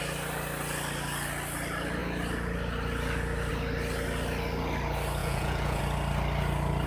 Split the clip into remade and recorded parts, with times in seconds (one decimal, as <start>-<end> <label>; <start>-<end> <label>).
0.0-5.2 recorded; 5.2-5.8 remade; 5.8-6.9 recorded